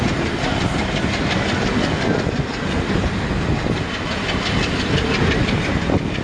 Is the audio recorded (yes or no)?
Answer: yes